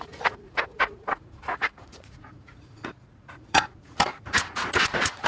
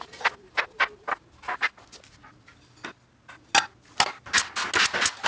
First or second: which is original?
second